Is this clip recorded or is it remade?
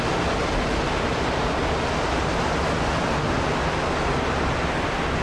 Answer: recorded